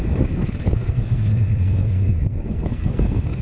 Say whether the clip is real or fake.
fake